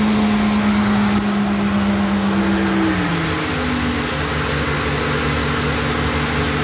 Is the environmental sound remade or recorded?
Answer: recorded